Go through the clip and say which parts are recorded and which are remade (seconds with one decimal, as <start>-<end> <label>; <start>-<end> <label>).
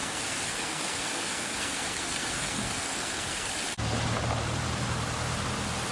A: 0.0-3.5 remade; 3.5-5.9 recorded